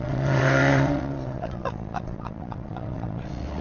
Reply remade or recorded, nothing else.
remade